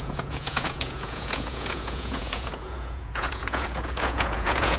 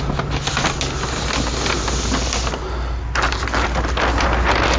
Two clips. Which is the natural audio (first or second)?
second